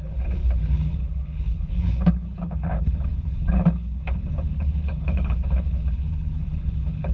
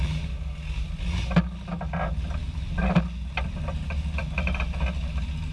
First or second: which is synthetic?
first